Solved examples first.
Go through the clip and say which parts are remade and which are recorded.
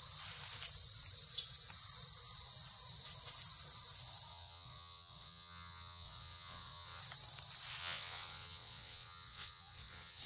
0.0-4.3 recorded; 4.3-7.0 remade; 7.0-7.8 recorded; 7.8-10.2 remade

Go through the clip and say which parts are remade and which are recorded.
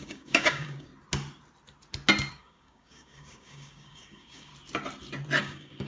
0.0-0.9 remade; 0.9-2.3 recorded; 2.3-4.5 remade; 4.5-5.4 recorded; 5.4-5.9 remade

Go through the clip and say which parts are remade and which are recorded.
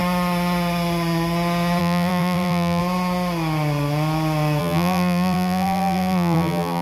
0.0-1.8 recorded; 1.8-2.8 remade; 2.8-4.6 recorded; 4.6-6.8 remade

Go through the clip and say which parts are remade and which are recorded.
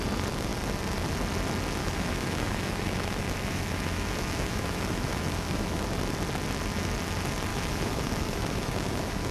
0.0-1.8 recorded; 1.8-5.8 remade; 5.8-7.5 recorded; 7.5-9.3 remade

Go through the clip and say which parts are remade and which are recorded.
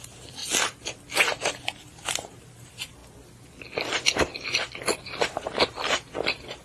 0.0-0.4 remade; 0.4-1.5 recorded; 1.5-3.0 remade; 3.0-5.2 recorded; 5.2-6.6 remade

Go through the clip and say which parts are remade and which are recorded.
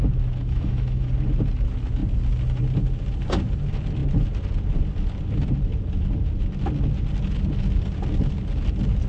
0.0-0.4 recorded; 0.4-1.1 remade; 1.1-9.1 recorded